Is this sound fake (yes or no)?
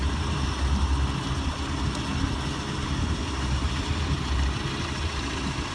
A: no